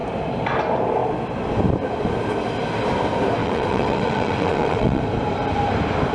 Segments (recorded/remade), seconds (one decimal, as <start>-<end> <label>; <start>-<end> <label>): 0.0-3.4 recorded; 3.4-5.0 remade; 5.0-6.1 recorded